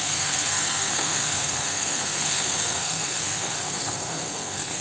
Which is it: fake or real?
fake